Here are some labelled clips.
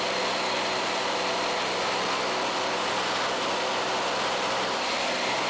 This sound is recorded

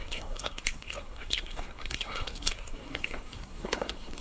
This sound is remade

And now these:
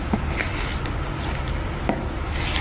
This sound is recorded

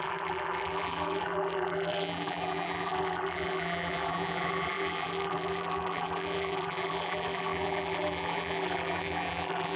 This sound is remade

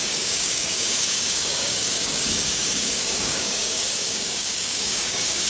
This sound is remade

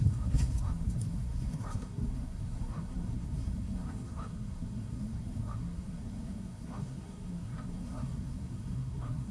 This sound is remade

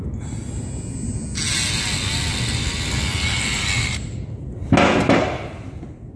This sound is recorded